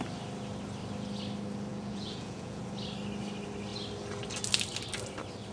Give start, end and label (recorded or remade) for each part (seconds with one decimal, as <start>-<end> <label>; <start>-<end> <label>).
0.0-1.7 recorded; 1.7-2.6 remade; 2.6-5.5 recorded